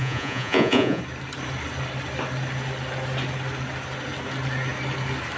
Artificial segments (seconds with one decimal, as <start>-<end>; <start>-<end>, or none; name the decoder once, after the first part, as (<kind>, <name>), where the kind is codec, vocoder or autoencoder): 0.0-1.0 (vocoder, Vocos)